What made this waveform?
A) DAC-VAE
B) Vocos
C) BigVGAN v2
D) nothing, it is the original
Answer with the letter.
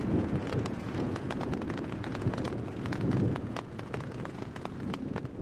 B